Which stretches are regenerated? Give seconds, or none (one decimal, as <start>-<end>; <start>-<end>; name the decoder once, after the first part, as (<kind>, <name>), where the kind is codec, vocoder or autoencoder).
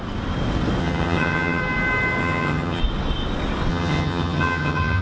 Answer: 0.8-1.6 (vocoder, HiFi-GAN); 2.2-2.8; 3.7-5.0